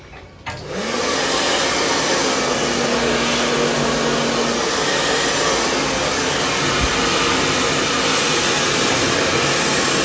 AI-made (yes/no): no